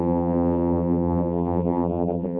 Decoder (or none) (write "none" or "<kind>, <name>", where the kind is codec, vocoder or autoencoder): vocoder, BigVGAN v2